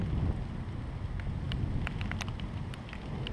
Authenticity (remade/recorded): recorded